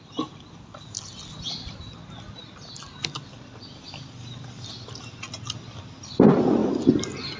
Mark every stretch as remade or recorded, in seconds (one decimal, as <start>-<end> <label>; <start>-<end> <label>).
0.0-7.4 recorded